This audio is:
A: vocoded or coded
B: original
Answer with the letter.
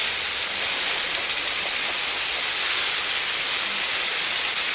B